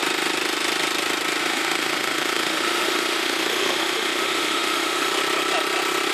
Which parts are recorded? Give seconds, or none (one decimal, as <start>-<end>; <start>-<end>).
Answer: 0.0-1.4; 5.1-6.1